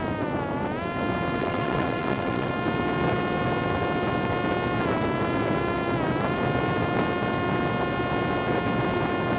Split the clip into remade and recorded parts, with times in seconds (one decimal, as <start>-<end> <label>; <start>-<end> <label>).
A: 0.0-1.4 recorded; 1.4-2.5 remade; 2.5-9.4 recorded